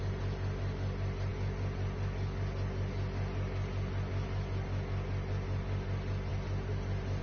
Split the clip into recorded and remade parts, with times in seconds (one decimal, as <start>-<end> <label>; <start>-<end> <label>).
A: 0.0-7.2 recorded

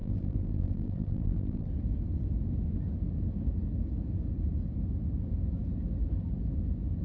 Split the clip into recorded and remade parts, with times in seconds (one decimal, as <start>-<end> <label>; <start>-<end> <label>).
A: 0.0-1.7 remade; 1.7-7.0 recorded

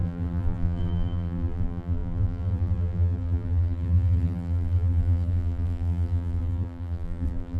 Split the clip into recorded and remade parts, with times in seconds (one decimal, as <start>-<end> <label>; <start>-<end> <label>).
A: 0.0-7.6 remade